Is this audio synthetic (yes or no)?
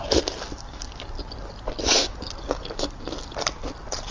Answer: no